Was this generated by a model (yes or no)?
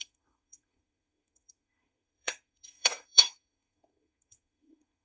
yes